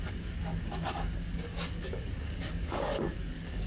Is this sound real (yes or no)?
no